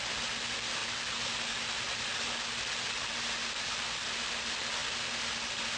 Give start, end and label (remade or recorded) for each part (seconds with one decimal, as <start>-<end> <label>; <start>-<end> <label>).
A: 0.0-5.8 recorded